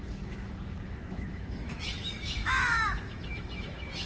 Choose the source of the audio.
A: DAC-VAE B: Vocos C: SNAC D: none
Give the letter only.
A